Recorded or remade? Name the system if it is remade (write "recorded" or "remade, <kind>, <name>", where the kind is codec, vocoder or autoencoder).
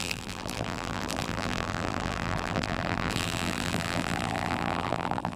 remade, vocoder, BigVGAN v2